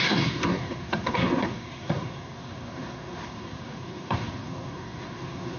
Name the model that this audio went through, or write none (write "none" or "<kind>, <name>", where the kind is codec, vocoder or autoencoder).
codec, SNAC